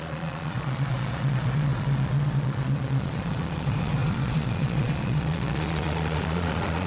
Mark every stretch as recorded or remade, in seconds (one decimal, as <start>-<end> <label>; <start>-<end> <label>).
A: 0.0-6.9 remade

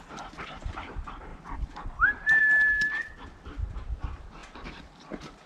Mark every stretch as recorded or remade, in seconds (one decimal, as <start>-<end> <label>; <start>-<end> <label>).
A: 0.0-5.5 recorded

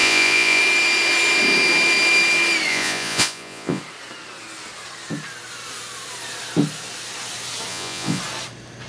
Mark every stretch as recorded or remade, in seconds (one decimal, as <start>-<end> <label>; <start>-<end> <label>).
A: 0.0-0.6 remade; 0.6-2.7 recorded; 2.7-3.8 remade; 3.8-7.7 recorded; 7.7-8.2 remade; 8.2-8.9 recorded

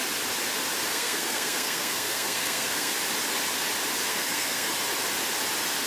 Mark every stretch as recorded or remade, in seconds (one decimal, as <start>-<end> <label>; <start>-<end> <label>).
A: 0.0-0.9 recorded; 0.9-2.9 remade; 2.9-4.1 recorded; 4.1-4.7 remade; 4.7-5.9 recorded

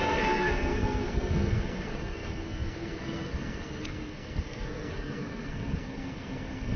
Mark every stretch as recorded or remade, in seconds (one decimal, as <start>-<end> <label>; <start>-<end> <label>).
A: 0.0-6.8 remade

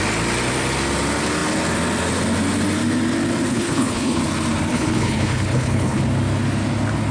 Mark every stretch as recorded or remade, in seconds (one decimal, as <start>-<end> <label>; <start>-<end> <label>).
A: 0.0-3.5 recorded; 3.5-4.2 remade; 4.2-4.7 recorded; 4.7-6.0 remade; 6.0-7.1 recorded

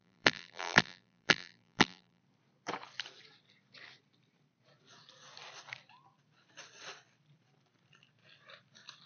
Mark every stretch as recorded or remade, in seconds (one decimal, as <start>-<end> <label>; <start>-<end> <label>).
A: 0.0-2.2 remade; 2.2-9.1 recorded